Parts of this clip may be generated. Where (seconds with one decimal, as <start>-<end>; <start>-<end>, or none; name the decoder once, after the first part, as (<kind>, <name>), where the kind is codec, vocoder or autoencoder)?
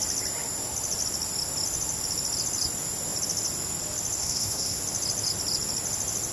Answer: 4.2-4.8 (codec, SNAC)